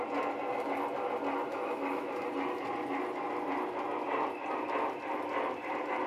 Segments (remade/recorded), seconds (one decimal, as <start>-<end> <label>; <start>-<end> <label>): 0.0-1.5 recorded; 1.5-2.1 remade; 2.1-6.1 recorded